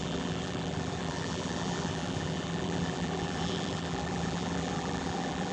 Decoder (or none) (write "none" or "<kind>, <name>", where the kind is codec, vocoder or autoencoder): vocoder, BigVGAN v2